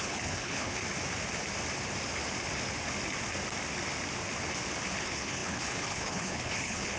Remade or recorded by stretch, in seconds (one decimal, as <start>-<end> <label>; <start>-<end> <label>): 0.0-0.8 remade; 0.8-5.0 recorded; 5.0-7.0 remade